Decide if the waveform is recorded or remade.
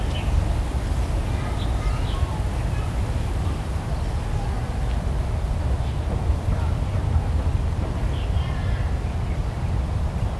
recorded